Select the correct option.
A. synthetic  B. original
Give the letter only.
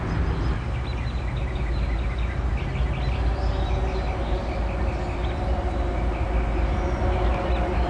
B